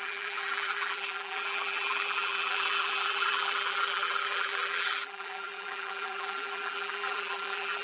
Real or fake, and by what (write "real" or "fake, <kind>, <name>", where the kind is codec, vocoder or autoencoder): fake, vocoder, BigVGAN v2